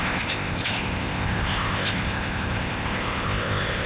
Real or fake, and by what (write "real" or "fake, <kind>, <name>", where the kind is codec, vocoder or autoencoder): fake, codec, ZipCodec